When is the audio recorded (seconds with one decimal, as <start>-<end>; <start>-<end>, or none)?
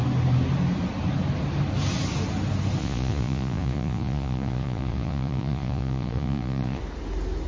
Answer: 0.0-2.8; 6.8-7.5